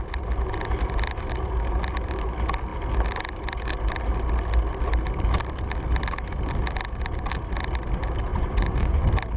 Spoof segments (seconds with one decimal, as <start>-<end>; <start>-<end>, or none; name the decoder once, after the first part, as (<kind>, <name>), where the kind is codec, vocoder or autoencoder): 8.3-9.0 (vocoder, Vocos)

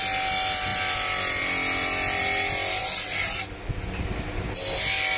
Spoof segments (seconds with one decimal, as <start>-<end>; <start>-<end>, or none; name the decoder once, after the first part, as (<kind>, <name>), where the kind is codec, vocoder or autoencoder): none

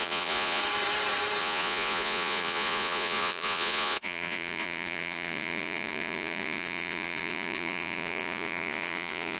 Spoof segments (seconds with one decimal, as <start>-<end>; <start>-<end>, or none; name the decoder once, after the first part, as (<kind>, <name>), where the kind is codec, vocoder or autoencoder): 0.0-0.6 (vocoder, Vocos); 1.4-9.4

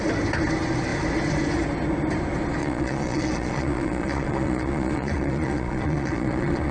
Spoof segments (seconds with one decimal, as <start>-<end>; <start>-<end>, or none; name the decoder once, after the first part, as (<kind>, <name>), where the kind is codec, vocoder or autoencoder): 2.6-6.7 (vocoder, Vocos)

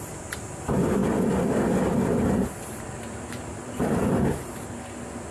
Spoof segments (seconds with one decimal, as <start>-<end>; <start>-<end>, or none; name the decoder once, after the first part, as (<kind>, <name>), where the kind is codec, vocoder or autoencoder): none